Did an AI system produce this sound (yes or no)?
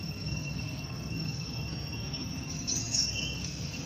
yes